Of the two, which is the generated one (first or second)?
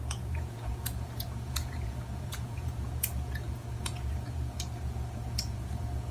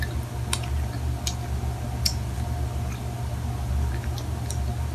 first